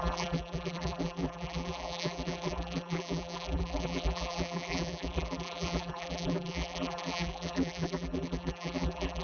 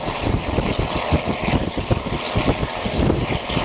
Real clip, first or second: second